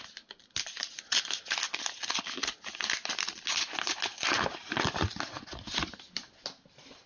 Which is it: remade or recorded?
recorded